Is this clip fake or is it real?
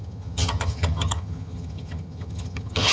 fake